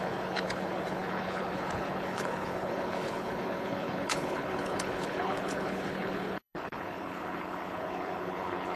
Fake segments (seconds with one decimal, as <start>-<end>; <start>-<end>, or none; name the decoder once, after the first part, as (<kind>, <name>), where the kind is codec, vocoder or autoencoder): 0.0-8.8 (codec, HILCodec)